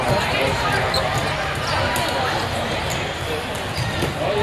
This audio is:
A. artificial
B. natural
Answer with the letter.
B